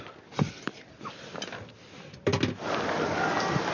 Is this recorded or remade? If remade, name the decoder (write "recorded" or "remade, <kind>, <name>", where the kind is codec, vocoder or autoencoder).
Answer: recorded